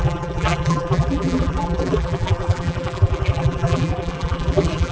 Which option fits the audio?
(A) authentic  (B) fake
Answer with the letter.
B